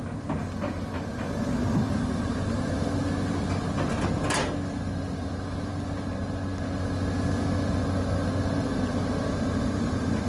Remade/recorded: recorded